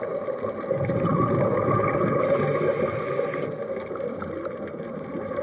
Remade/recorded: recorded